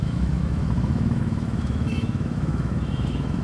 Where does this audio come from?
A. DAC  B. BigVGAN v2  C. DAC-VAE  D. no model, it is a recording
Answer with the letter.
C